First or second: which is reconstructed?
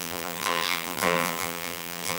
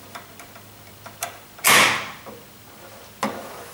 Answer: first